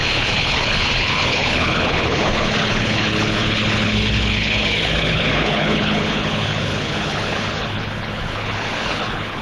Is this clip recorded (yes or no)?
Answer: no